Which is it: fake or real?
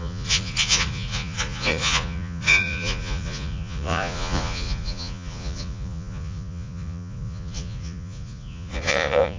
fake